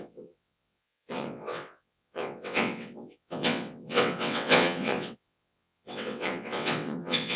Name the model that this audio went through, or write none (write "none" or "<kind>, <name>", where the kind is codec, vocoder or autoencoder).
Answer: vocoder, WaveNeXt